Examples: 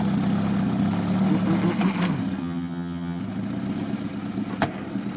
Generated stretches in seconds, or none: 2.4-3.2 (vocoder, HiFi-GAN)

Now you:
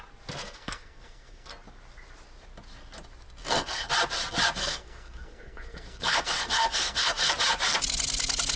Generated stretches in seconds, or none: 0.4-1.5 (codec, SNAC); 3.4-3.9; 4.6-7.3

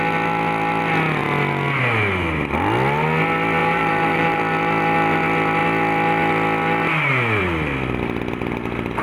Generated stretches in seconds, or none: 3.6-4.4 (vocoder, BigVGAN v2)

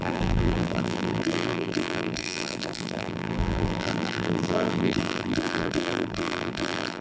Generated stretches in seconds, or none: 0.0-7.0 (vocoder, BigVGAN v2)

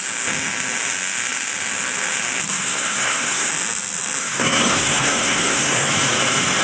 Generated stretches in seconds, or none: 2.5-3.5 (codec, SNAC); 4.2-5.9

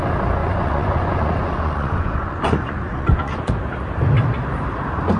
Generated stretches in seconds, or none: 0.4-3.5 (vocoder, Vocos)

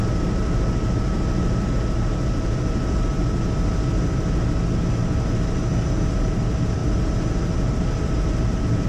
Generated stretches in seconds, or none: none

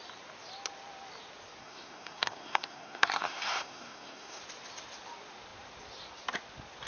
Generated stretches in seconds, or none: 1.6-4.4 (codec, SNAC)